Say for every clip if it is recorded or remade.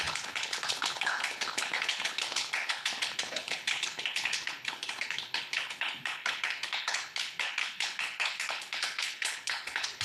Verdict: remade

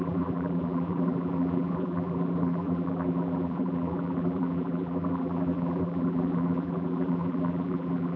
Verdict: remade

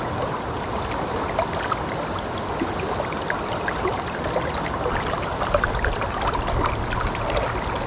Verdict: recorded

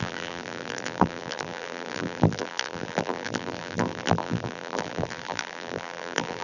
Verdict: remade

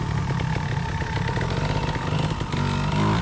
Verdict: recorded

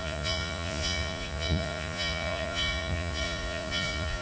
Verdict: remade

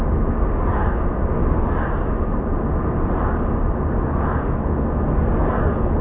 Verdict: recorded